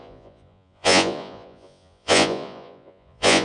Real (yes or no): no